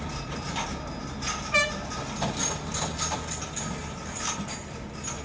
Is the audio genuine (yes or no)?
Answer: yes